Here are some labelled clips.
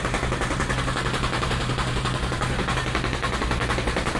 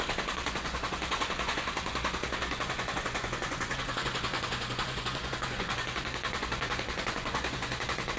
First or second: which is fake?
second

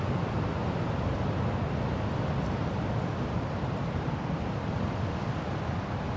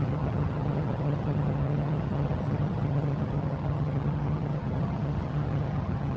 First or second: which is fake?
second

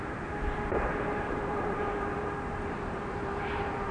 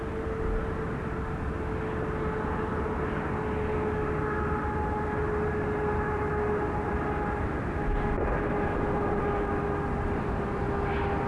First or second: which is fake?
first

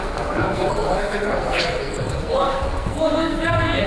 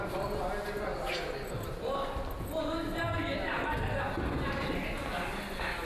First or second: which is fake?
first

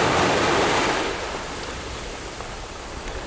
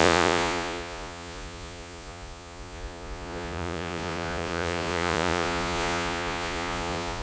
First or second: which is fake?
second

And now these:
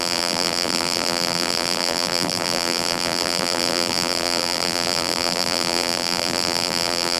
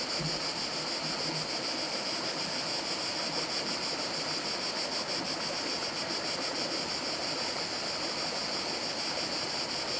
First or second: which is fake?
first